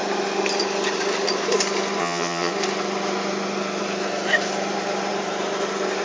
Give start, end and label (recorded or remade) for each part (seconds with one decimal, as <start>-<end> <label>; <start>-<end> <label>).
0.0-2.0 recorded; 2.0-2.5 remade; 2.5-6.0 recorded